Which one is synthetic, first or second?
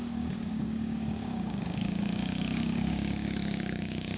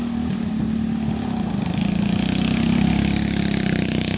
first